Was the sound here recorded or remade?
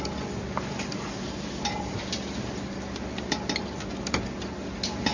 recorded